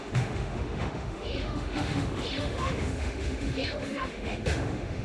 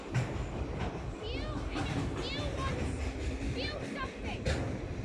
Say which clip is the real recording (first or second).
second